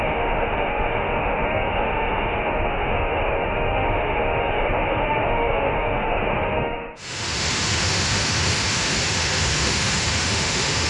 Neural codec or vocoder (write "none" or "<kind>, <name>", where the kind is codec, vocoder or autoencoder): autoencoder, DAC-VAE